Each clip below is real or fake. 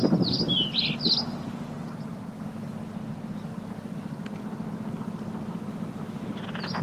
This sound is real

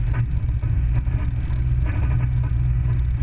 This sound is real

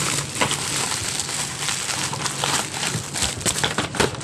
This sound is real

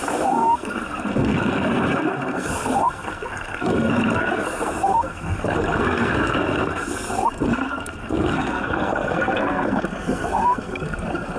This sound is fake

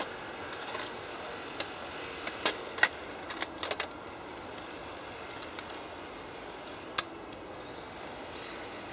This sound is real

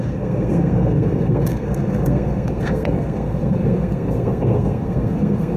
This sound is fake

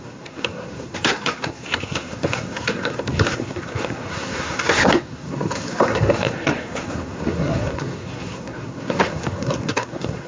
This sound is fake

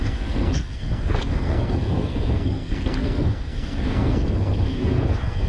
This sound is fake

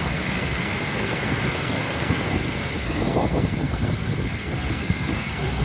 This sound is fake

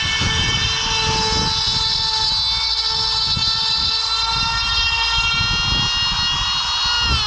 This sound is real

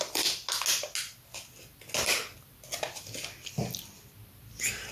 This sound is real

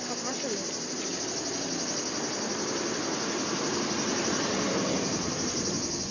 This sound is real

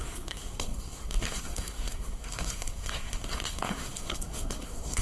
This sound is fake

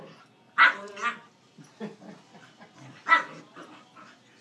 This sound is real